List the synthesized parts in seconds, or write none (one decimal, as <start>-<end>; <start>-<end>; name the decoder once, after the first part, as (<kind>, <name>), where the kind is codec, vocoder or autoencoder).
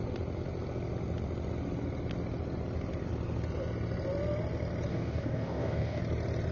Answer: 4.9-6.0 (codec, DAC)